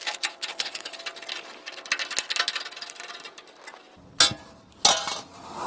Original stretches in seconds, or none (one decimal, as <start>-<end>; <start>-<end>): 0.0-0.5; 1.0-5.7